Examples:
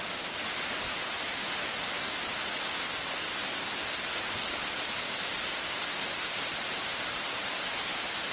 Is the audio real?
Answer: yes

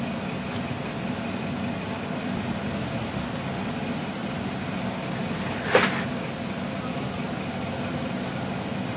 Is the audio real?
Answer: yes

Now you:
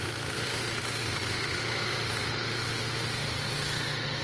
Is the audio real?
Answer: no